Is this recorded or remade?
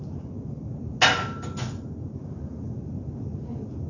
recorded